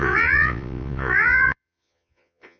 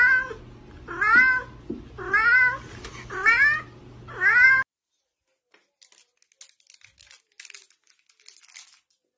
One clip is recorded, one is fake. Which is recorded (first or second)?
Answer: second